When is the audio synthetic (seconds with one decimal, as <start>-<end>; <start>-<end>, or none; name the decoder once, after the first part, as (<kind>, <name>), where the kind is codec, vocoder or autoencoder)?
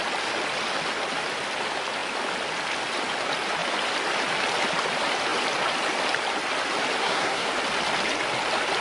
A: 7.0-7.5 (codec, SNAC)